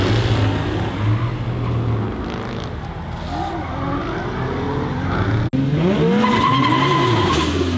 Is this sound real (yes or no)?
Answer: yes